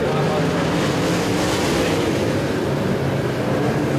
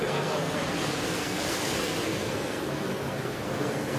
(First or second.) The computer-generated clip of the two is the second